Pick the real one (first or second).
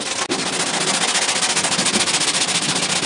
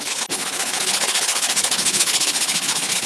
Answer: first